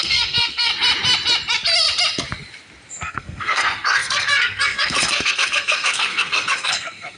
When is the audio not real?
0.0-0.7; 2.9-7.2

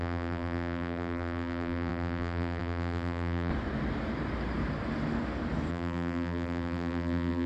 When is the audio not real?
0.0-3.5; 5.7-7.5

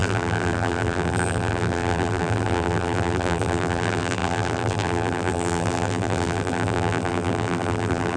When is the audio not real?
0.0-8.2

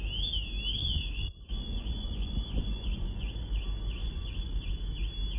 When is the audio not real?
0.8-3.5; 4.0-4.7

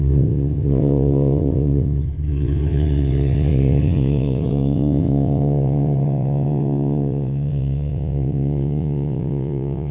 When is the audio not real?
0.0-9.9

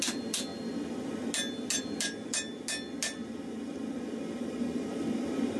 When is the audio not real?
none